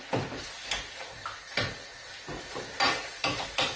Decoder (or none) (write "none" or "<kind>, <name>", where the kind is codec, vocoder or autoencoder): none